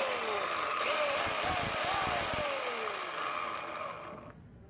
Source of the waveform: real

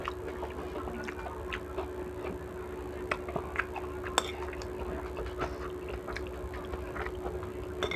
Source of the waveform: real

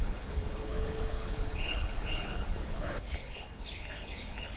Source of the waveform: fake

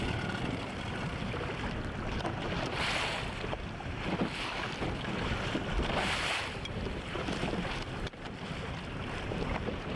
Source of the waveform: fake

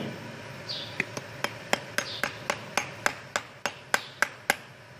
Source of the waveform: real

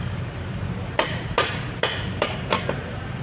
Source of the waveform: fake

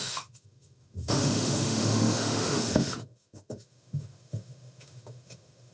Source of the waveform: fake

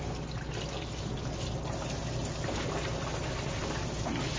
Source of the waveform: real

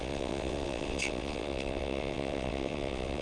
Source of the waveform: fake